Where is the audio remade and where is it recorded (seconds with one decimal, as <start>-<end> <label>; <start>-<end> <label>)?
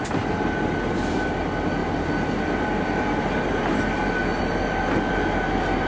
0.0-5.9 recorded